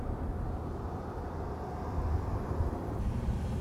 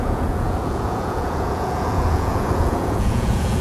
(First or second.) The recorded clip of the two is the first